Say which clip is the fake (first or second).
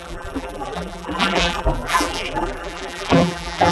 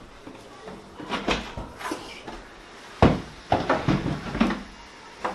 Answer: first